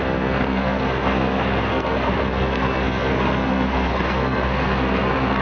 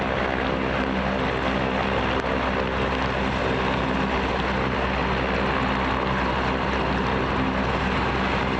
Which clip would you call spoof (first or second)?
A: first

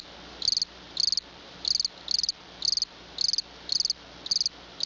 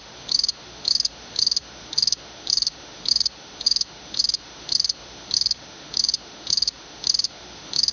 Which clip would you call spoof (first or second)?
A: second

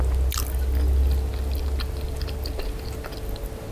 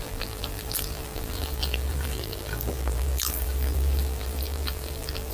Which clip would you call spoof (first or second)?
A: second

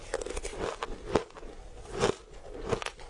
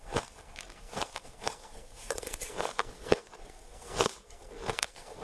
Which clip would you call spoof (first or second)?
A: second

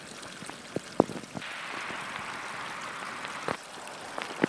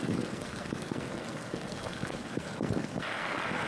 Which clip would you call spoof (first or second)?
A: second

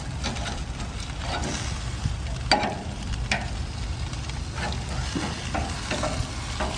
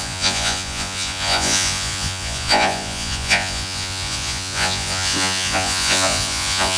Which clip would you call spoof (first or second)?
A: second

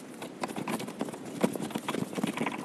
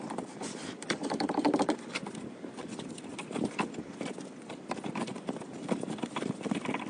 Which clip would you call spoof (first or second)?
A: second